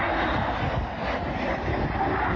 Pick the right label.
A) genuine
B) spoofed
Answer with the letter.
A